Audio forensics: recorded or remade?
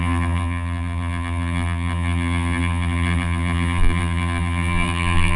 remade